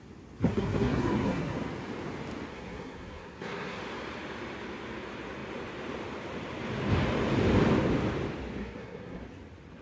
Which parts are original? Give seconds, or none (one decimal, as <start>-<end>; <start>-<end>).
0.0-0.5; 1.7-2.5; 3.8-8.6; 9.2-9.8